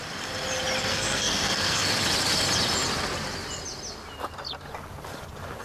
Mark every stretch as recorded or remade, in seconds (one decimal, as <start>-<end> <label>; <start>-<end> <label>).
0.0-0.9 recorded; 0.9-1.9 remade; 1.9-5.6 recorded